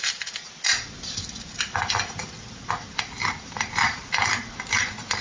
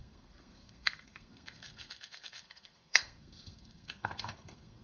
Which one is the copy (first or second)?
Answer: second